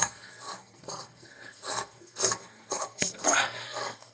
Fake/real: fake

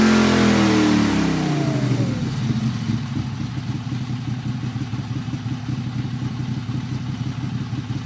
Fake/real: real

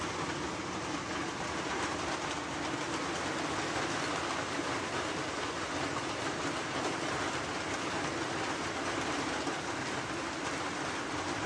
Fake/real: real